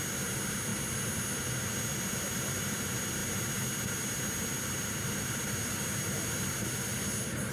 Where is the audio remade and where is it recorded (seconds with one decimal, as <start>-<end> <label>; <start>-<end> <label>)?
0.0-7.5 recorded